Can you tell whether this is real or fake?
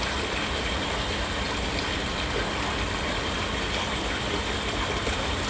real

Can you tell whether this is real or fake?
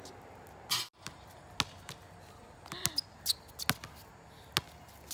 real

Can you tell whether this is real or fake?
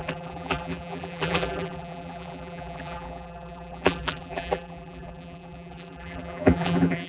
fake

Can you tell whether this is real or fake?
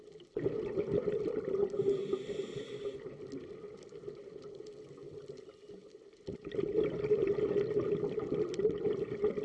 real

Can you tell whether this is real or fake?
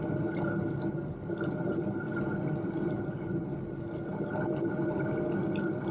real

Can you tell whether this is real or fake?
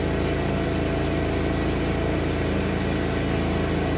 real